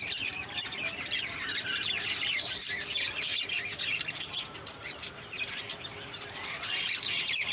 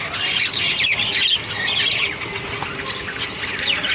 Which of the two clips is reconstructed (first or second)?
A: first